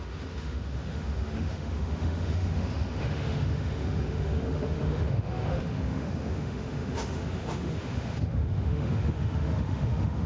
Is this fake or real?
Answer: fake